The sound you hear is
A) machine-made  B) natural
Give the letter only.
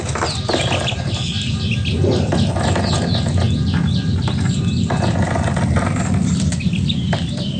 B